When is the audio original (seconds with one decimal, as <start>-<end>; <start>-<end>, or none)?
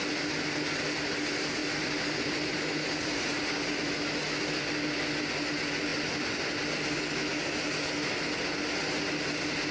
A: 0.0-1.6; 3.4-9.7